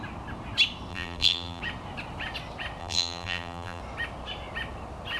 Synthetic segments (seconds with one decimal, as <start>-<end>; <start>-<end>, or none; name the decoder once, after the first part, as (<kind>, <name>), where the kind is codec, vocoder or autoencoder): 0.9-1.6 (vocoder, BigVGAN v2); 2.8-3.8